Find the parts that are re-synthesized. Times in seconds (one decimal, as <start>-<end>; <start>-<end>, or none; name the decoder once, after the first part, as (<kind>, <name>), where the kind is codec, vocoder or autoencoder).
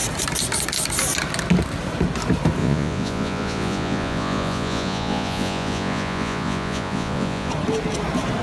2.6-7.5 (vocoder, Vocos)